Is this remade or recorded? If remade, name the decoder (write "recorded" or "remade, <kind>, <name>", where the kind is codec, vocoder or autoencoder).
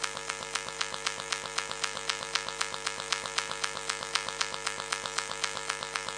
recorded